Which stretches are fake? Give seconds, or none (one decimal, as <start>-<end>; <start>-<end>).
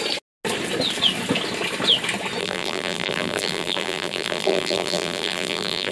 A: 2.4-5.9